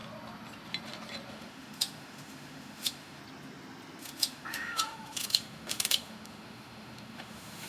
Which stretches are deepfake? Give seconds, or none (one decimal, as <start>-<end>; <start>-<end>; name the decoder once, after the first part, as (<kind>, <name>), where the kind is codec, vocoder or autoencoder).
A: 1.3-3.2 (autoencoder, DAC-VAE); 4.0-7.7